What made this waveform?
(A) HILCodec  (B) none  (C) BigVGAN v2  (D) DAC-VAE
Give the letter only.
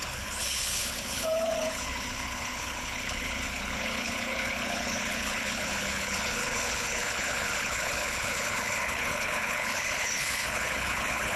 A